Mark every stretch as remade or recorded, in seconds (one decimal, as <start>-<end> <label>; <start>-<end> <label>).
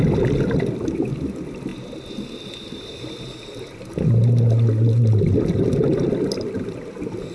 0.0-1.7 remade; 1.7-6.1 recorded; 6.1-7.3 remade